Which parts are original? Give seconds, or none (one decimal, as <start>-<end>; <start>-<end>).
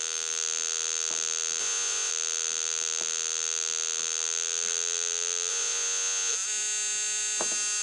0.0-1.6; 2.1-5.5; 6.3-7.8